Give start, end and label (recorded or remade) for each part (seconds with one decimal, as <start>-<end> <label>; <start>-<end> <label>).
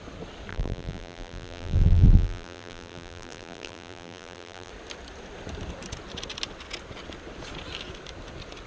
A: 0.0-0.5 recorded; 0.5-4.7 remade; 4.7-8.7 recorded